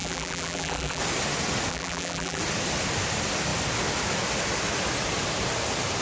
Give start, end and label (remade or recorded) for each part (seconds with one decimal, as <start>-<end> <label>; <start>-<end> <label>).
0.0-1.0 remade; 1.0-1.7 recorded; 1.7-2.4 remade; 2.4-6.0 recorded